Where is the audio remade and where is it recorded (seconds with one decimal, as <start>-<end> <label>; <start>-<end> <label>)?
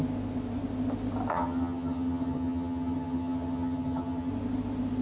0.0-1.3 recorded; 1.3-4.3 remade; 4.3-5.0 recorded